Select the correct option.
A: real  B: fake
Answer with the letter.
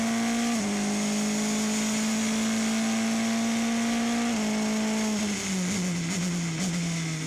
A